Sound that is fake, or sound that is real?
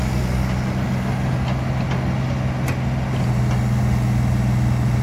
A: real